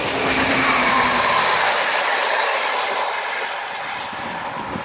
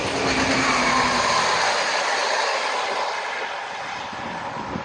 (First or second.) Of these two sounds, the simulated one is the first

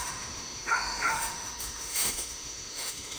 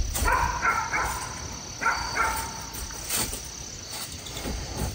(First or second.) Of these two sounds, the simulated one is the first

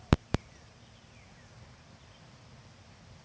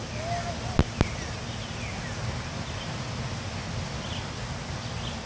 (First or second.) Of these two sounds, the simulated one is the first